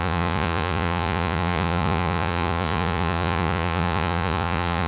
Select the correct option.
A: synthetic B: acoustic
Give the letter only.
A